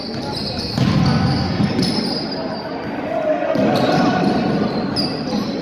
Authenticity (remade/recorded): recorded